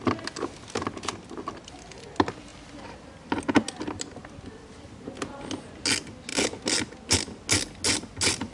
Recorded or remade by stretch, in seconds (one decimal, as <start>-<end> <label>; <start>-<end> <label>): 0.0-2.5 recorded; 2.5-3.4 remade; 3.4-4.2 recorded; 4.2-5.3 remade; 5.3-8.5 recorded